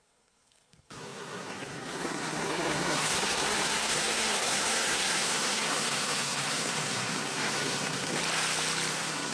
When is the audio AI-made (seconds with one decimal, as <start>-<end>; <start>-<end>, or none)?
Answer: 0.0-8.2; 8.9-9.3

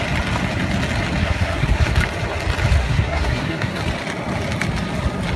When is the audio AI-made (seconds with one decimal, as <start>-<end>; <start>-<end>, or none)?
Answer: 1.2-1.9; 2.8-3.8

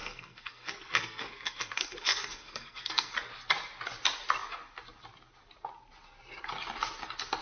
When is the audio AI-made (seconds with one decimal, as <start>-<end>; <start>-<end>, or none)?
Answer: 0.0-3.1

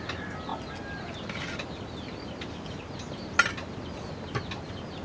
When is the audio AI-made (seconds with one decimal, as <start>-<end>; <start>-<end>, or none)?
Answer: none

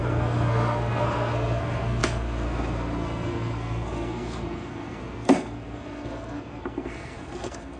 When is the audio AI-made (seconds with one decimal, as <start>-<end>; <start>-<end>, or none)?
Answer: 0.0-7.8

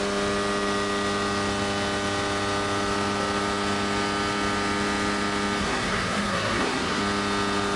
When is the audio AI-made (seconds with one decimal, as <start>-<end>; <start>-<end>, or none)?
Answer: 5.6-7.0

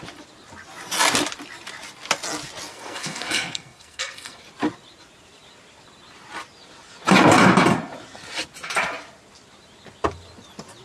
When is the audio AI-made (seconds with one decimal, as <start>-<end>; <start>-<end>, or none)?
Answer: 2.7-4.4

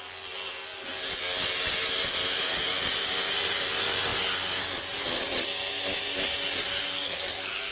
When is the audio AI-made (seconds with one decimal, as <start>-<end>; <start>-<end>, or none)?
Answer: 6.8-7.7